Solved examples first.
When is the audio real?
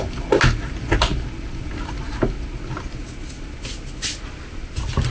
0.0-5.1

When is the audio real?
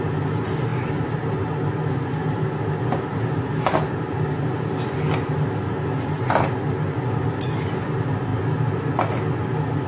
0.0-9.9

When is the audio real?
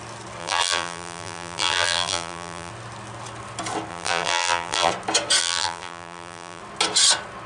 0.0-0.4; 2.7-3.9; 4.9-5.4; 6.6-7.5